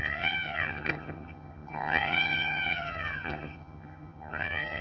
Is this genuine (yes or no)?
no